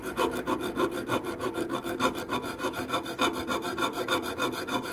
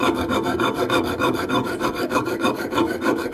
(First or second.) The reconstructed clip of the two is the second